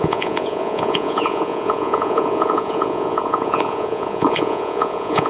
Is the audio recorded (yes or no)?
no